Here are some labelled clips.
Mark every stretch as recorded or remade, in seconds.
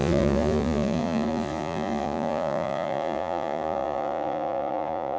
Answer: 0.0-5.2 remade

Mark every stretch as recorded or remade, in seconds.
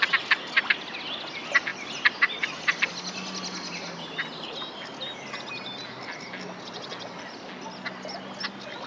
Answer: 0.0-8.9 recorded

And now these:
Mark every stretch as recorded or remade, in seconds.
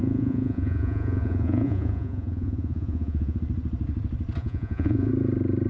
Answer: 0.0-3.4 remade; 3.4-4.4 recorded; 4.4-5.1 remade; 5.1-5.7 recorded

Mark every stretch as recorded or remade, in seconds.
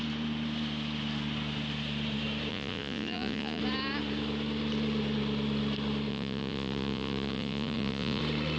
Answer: 0.0-2.5 recorded; 2.5-3.6 remade; 3.6-6.1 recorded; 6.1-8.2 remade; 8.2-8.6 recorded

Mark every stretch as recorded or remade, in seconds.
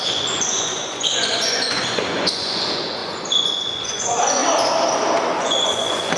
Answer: 0.0-4.4 remade; 4.4-5.4 recorded; 5.4-6.2 remade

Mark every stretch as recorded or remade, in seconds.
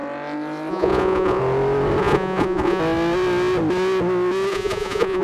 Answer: 0.0-0.7 recorded; 0.7-1.4 remade; 1.4-2.0 recorded; 2.0-2.8 remade; 2.8-4.5 recorded; 4.5-5.2 remade